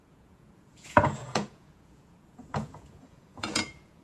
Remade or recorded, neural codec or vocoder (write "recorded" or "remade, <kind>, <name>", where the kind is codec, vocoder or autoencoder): remade, vocoder, Vocos